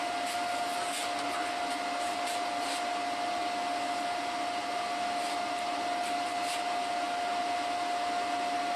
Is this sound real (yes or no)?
yes